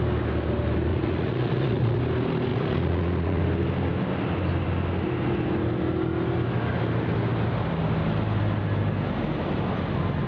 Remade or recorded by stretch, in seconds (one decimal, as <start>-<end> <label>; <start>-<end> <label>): 0.0-0.9 recorded; 0.9-2.0 remade; 2.0-2.5 recorded; 2.5-3.4 remade; 3.4-10.3 recorded